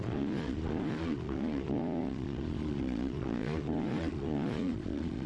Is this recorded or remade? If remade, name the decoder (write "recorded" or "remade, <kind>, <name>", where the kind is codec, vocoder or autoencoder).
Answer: remade, vocoder, Vocos